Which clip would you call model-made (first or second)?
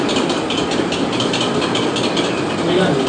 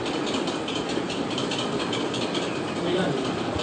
second